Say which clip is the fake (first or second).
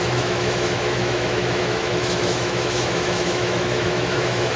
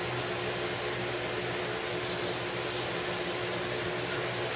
first